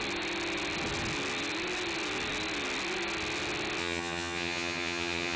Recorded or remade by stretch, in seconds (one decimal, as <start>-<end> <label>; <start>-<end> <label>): 0.0-3.8 recorded; 3.8-5.4 remade